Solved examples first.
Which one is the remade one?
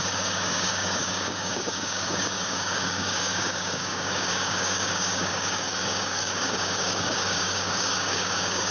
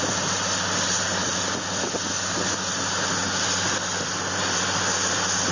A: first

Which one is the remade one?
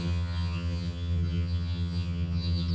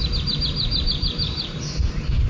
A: first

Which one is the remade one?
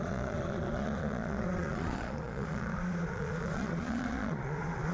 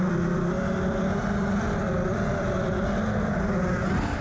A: first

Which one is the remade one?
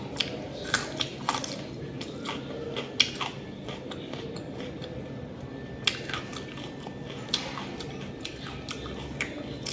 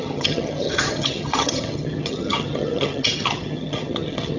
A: second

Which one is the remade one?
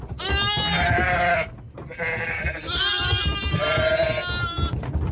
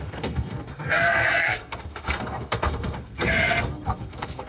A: second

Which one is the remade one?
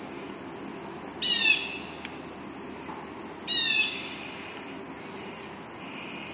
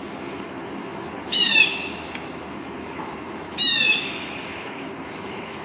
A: second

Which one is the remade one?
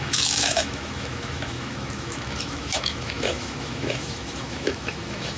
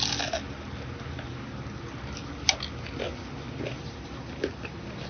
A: first